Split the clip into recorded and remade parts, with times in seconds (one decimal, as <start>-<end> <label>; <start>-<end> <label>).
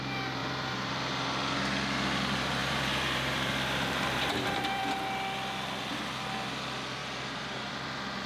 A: 0.0-0.4 recorded; 0.4-1.1 remade; 1.1-2.6 recorded; 2.6-4.8 remade; 4.8-7.0 recorded; 7.0-7.7 remade; 7.7-8.3 recorded